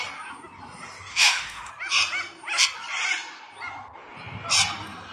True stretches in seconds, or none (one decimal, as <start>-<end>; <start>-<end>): 0.0-1.1; 1.7-5.1